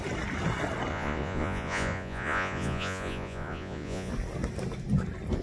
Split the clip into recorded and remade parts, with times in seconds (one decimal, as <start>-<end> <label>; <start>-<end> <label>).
0.0-0.9 recorded; 0.9-4.1 remade; 4.1-5.4 recorded